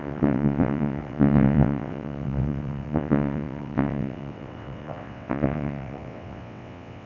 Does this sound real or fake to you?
fake